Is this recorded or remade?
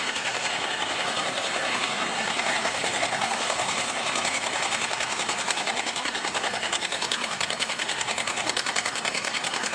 remade